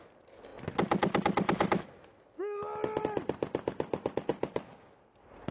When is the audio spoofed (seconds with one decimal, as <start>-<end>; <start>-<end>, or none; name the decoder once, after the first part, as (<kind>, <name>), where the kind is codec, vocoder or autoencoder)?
none